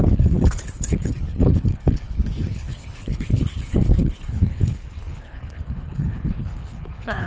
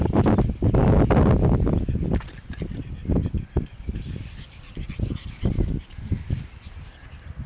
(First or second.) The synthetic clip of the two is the first